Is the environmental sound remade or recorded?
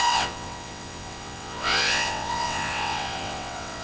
remade